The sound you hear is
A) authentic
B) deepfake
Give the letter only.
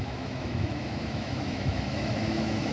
B